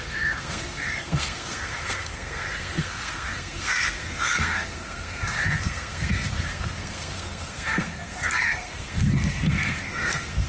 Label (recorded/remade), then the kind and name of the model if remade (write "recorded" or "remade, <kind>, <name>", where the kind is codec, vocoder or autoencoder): remade, codec, SNAC